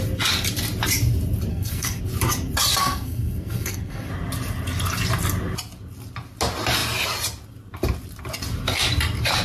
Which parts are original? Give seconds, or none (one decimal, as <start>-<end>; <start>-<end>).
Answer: 0.0-1.5; 2.0-2.8; 4.1-9.4